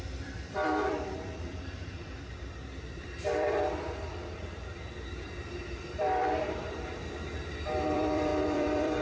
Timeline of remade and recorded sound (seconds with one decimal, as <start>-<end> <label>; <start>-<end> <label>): 0.0-9.0 remade